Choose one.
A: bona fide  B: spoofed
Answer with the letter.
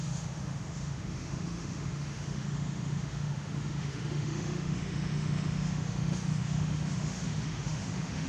B